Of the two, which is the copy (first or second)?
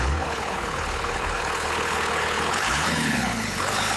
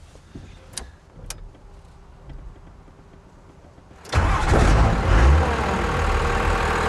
first